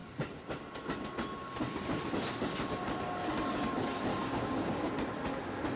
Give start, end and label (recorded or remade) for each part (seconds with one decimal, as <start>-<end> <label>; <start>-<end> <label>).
0.0-4.1 recorded; 4.1-4.9 remade; 4.9-5.8 recorded